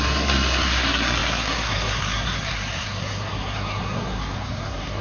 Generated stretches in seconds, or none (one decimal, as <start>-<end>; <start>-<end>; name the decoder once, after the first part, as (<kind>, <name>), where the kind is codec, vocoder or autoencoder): 0.0-5.0 (codec, SNAC)